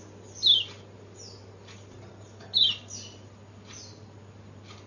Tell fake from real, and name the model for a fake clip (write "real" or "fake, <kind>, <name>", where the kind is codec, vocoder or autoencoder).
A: real